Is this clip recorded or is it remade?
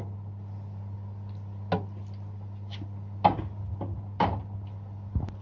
recorded